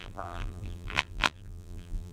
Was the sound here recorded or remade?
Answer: remade